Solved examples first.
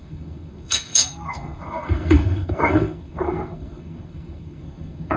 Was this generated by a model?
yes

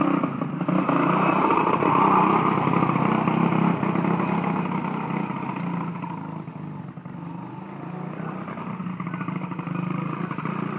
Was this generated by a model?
no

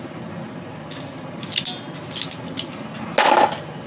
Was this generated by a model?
no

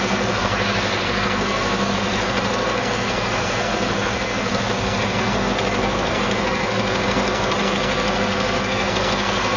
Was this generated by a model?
yes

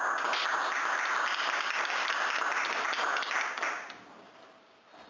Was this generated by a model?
no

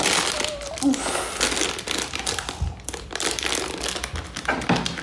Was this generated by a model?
no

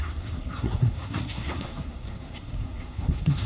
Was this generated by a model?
yes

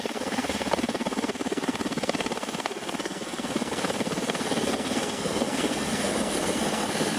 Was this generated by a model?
yes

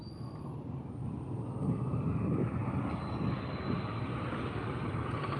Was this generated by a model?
no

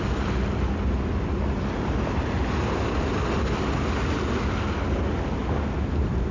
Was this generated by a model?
no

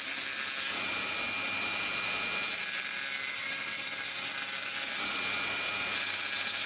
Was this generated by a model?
no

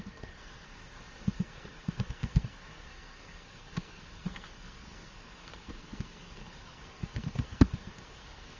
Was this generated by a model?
yes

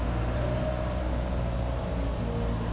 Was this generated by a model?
no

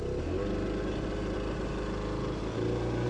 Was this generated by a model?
no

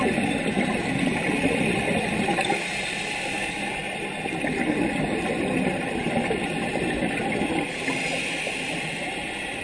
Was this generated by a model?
no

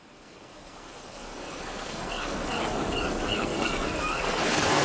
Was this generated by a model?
yes